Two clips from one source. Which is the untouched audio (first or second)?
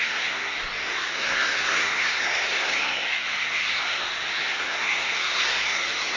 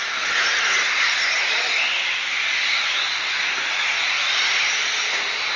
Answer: second